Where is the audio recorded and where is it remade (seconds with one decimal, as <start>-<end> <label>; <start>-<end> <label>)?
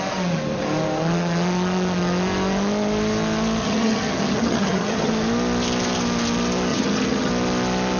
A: 0.0-3.6 recorded; 3.6-5.1 remade; 5.1-6.7 recorded; 6.7-7.3 remade; 7.3-8.0 recorded